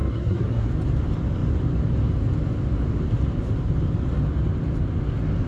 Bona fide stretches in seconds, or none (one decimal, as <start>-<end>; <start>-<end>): 0.7-5.5